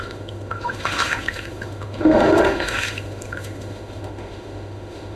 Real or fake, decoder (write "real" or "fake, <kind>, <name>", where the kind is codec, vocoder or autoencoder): fake, autoencoder, DAC-VAE